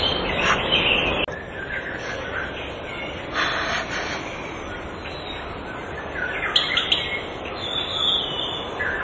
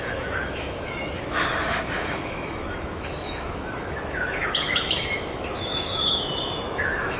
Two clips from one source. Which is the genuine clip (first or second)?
first